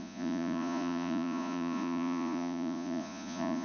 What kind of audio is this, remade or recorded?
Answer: remade